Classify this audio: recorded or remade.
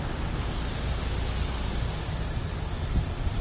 recorded